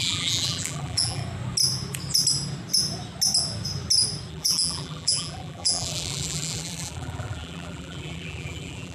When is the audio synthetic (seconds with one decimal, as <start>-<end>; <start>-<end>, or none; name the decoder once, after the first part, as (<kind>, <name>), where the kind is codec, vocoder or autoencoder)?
0.0-1.2 (vocoder, BigVGAN v2); 4.3-8.9